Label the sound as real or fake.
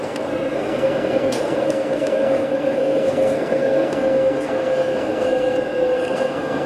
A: fake